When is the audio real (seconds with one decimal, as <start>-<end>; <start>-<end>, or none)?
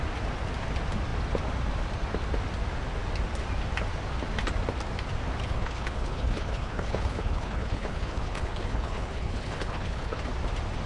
0.0-5.4; 10.2-10.9